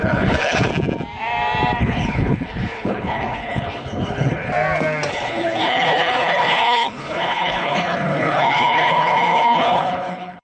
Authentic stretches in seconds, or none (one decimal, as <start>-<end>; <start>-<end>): 0.7-1.8; 4.5-5.1